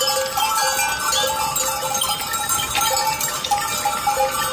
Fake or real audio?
real